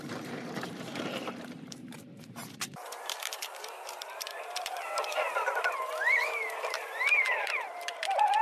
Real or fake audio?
fake